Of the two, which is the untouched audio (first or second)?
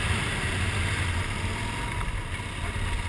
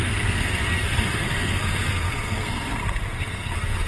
first